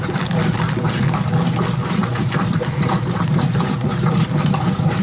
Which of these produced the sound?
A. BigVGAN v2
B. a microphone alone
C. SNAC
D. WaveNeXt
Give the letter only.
A